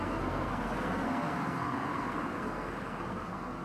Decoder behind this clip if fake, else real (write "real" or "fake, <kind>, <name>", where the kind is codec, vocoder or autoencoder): fake, codec, SNAC